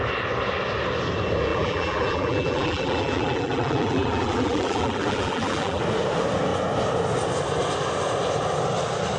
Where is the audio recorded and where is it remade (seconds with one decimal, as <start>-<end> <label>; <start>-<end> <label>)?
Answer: 0.0-1.5 recorded; 1.5-5.8 remade; 5.8-9.2 recorded